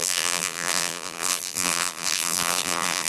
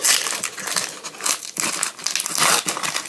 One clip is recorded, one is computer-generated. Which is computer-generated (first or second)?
first